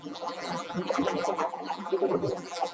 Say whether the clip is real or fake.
fake